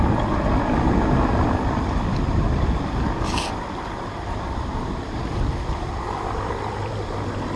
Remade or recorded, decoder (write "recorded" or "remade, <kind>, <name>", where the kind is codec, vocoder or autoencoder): recorded